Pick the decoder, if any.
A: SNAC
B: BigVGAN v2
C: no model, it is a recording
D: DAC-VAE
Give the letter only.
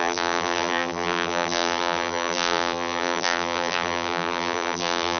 B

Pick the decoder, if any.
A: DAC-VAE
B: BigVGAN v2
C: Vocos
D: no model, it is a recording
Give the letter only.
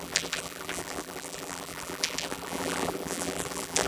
B